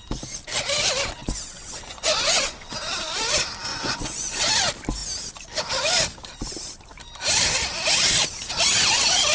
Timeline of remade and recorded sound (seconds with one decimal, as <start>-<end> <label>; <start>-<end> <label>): 0.0-1.2 recorded; 1.2-2.7 remade; 2.7-3.7 recorded; 3.7-4.5 remade; 4.5-9.3 recorded